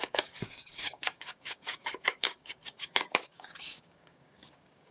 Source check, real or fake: fake